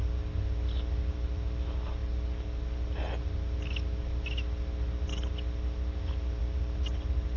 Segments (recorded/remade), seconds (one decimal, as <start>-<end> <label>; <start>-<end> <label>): 0.0-7.4 recorded